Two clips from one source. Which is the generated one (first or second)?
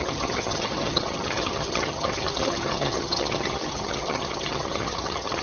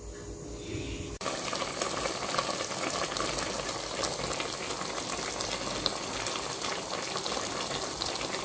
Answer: first